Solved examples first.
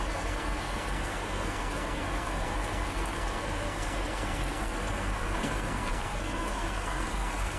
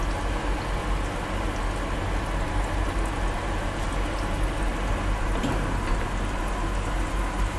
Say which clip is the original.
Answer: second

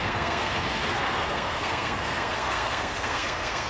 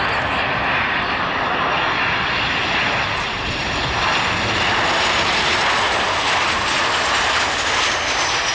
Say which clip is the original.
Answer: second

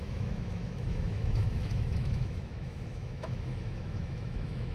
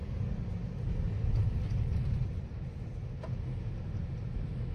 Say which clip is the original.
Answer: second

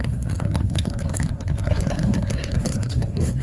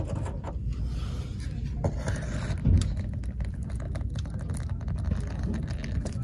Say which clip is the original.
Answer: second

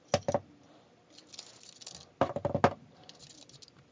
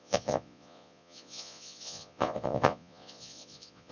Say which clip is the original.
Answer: first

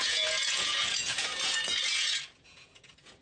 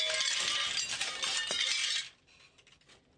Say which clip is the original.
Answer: second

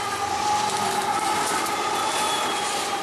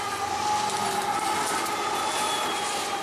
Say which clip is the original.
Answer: second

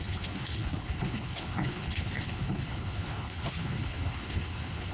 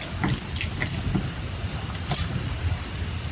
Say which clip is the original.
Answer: second